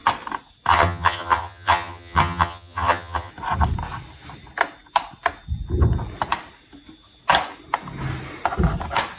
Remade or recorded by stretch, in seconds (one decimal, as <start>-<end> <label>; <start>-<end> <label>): 0.0-0.7 recorded; 0.7-3.3 remade; 3.3-9.2 recorded